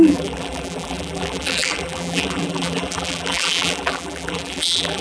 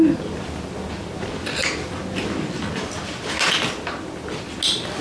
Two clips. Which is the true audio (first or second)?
second